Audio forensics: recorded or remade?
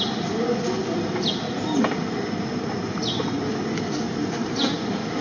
recorded